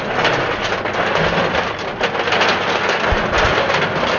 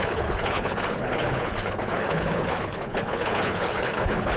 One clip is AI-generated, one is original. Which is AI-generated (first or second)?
second